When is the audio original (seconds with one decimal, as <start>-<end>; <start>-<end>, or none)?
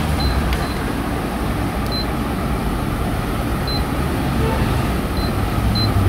0.0-6.1